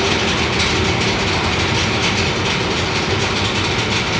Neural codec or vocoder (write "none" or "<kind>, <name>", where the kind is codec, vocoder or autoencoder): none